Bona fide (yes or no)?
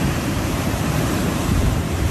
no